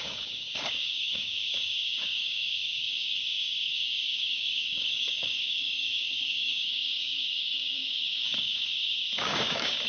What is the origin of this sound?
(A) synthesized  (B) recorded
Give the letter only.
A